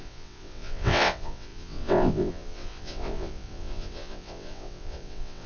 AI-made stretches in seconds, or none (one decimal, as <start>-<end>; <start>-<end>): 0.0-5.5